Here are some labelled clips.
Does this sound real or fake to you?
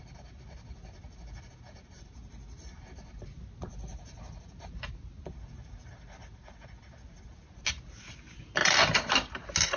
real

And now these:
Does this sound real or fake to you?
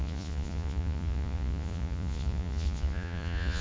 fake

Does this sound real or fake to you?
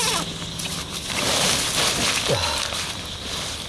real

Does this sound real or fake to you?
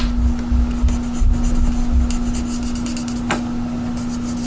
real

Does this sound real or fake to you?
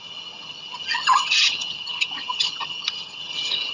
fake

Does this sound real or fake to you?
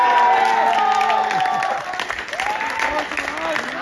real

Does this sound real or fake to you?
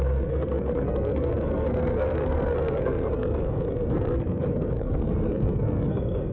fake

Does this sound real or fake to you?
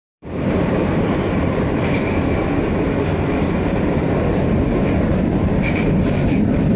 fake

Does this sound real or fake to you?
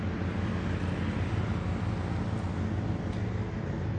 real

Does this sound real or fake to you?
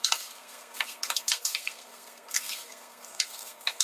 fake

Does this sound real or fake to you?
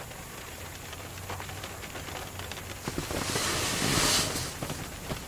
real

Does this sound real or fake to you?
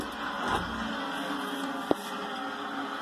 real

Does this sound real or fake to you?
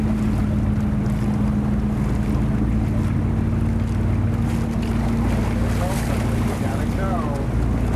real